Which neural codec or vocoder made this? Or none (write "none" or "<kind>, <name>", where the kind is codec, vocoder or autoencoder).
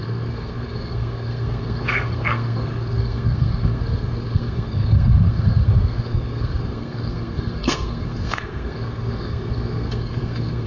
codec, SNAC